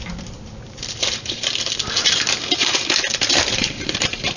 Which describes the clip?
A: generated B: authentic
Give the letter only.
A